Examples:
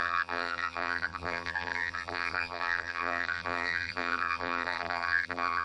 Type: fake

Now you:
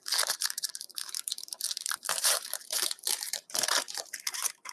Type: fake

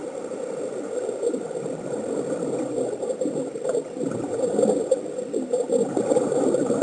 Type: fake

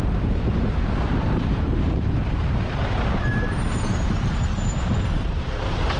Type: fake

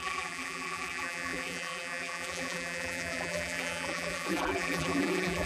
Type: fake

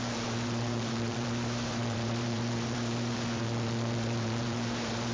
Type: fake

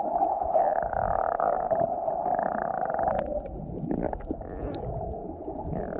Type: fake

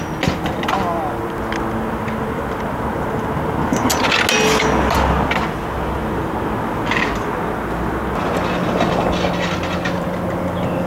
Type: real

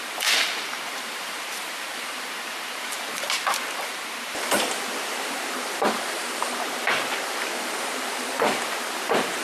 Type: fake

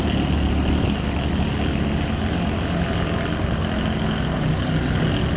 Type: real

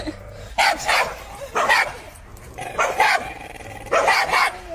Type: fake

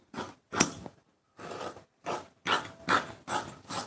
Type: real